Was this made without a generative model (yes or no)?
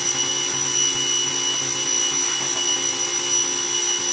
yes